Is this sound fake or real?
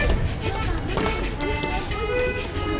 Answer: real